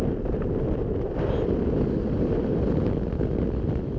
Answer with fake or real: real